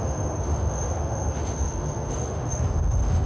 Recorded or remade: remade